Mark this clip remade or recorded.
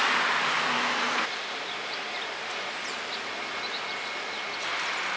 recorded